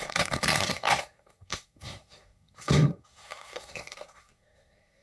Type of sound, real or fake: fake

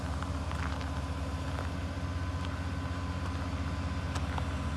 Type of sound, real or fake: real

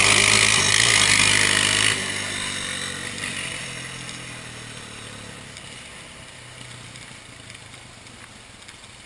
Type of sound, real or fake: real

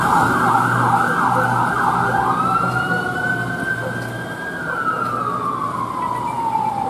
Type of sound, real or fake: real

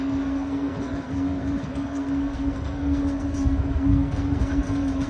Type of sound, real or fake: fake